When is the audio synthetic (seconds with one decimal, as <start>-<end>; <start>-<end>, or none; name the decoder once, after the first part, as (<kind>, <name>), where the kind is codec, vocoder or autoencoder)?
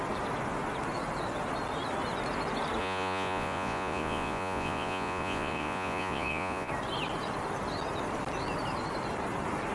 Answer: 2.8-6.7 (vocoder, Vocos)